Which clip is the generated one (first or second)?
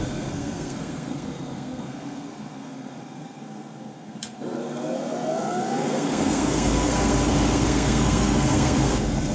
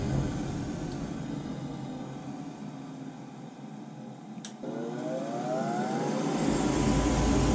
first